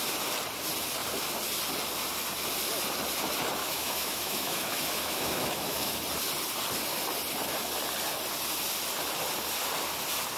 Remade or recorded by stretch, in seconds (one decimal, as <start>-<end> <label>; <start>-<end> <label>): 0.0-3.6 recorded; 3.6-5.9 remade; 5.9-10.4 recorded